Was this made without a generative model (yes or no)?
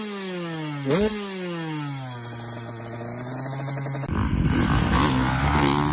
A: yes